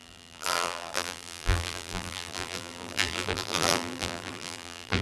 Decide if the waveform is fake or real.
fake